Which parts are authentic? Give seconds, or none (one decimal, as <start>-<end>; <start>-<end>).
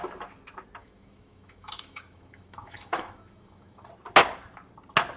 0.0-0.8; 3.9-5.2